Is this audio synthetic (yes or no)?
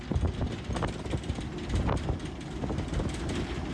no